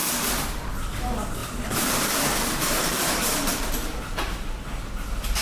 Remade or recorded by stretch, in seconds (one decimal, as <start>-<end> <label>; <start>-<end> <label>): 0.0-0.8 remade; 0.8-1.4 recorded; 1.4-4.0 remade; 4.0-5.4 recorded